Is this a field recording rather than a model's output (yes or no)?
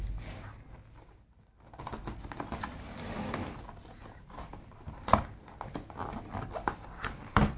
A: yes